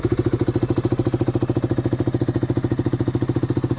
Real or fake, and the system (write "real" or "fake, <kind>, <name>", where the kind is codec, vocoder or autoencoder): real